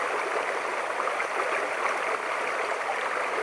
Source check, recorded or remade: recorded